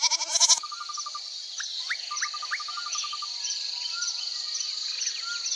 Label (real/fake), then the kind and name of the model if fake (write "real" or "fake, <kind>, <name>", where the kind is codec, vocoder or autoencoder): real